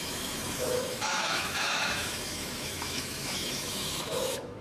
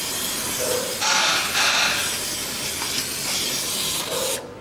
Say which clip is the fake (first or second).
first